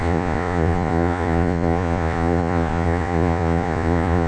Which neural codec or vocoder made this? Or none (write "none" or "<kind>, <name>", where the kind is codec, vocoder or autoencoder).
vocoder, Vocos